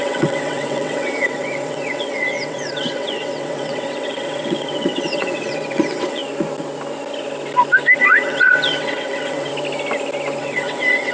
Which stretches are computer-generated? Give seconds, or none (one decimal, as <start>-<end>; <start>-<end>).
0.0-6.2; 8.0-9.5; 10.4-11.1